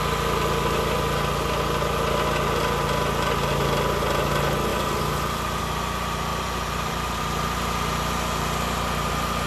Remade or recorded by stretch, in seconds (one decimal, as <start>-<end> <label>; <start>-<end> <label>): 0.0-4.7 recorded; 4.7-5.6 remade; 5.6-6.3 recorded; 6.3-7.2 remade; 7.2-9.5 recorded